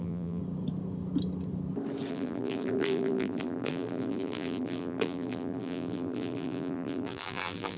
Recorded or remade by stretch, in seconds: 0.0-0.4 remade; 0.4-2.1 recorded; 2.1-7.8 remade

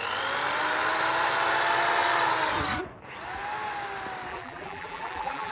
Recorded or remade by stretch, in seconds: 0.0-4.3 recorded; 4.3-5.5 remade

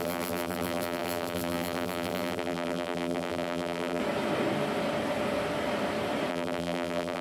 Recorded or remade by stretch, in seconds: 0.0-4.0 remade; 4.0-6.3 recorded; 6.3-7.2 remade